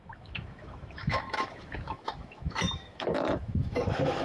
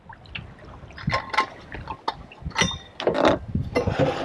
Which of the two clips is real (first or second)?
second